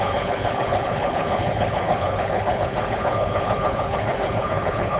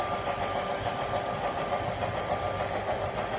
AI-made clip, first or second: first